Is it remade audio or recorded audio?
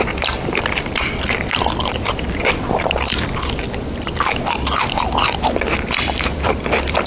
remade